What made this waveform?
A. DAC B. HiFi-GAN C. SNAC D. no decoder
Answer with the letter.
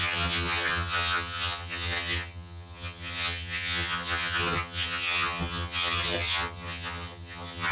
B